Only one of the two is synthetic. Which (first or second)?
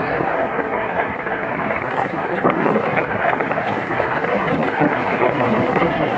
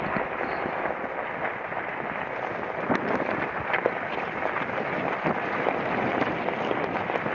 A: first